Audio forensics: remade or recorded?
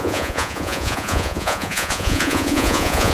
remade